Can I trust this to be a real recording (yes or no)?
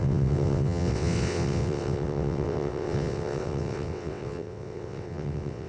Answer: no